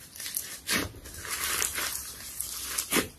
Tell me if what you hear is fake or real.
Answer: real